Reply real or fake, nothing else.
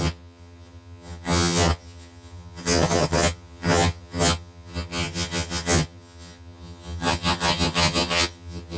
fake